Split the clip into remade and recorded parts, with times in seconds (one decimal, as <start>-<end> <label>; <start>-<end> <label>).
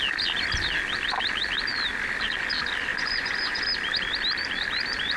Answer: 0.0-2.9 recorded; 2.9-3.6 remade; 3.6-5.2 recorded